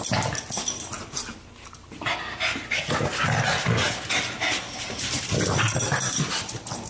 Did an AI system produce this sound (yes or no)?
no